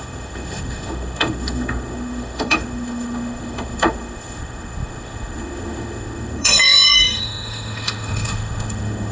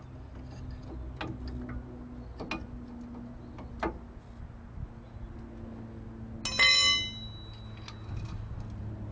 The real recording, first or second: second